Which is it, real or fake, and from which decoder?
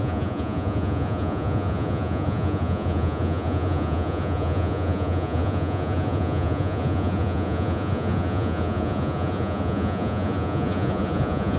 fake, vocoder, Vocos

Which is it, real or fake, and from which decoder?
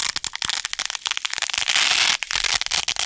real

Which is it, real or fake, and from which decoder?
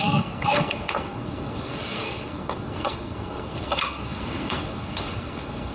fake, codec, SNAC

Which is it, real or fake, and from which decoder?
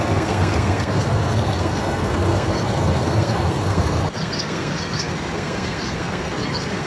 fake, codec, SNAC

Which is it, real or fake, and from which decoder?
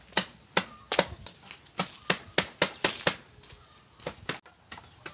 real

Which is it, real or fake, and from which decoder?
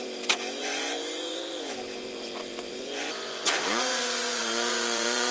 fake, vocoder, Vocos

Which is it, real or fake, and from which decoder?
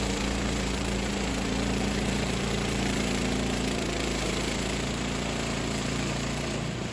fake, vocoder, BigVGAN v2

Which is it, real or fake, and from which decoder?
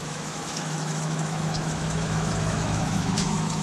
fake, autoencoder, DAC-VAE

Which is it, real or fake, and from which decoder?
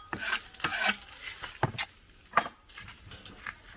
real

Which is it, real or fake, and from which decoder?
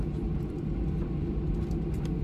real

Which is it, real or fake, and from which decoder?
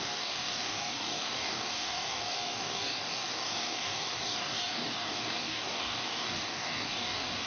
fake, codec, DAC